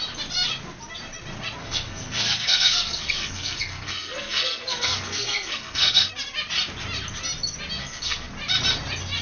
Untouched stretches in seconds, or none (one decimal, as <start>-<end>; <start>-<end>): 0.0-1.6; 6.1-7.8; 8.3-9.2